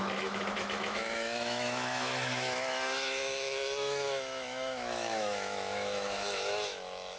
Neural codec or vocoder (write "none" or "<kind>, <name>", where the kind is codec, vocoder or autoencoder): autoencoder, DAC-VAE